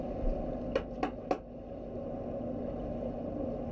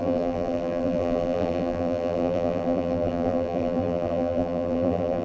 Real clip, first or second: first